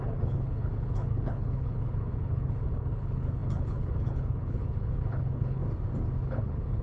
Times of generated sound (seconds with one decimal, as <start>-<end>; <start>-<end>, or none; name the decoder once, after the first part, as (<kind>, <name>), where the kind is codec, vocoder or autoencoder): 0.0-5.6 (codec, HILCodec); 6.2-6.8